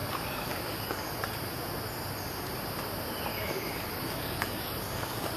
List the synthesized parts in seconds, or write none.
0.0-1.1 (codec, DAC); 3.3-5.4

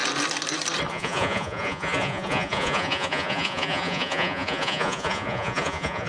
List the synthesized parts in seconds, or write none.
0.9-6.1 (vocoder, Vocos)

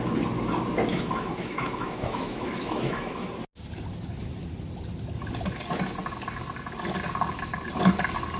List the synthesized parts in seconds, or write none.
0.9-3.3 (autoencoder, DAC-VAE)

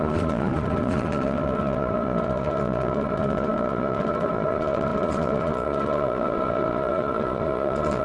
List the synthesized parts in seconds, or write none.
0.0-8.0 (vocoder, Vocos)

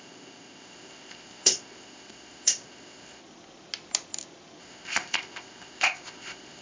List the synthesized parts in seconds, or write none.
0.0-3.2 (codec, ZipCodec); 4.6-6.6